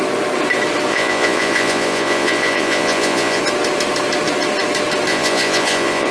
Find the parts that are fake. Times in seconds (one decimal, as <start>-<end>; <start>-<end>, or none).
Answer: 0.9-3.4; 5.1-6.1